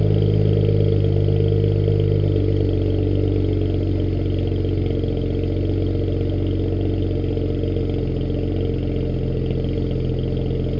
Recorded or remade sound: recorded